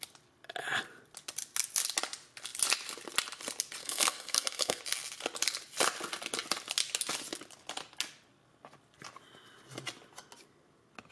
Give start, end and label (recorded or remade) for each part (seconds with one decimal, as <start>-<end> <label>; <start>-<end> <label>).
0.0-3.8 recorded; 3.8-4.8 remade; 4.8-11.1 recorded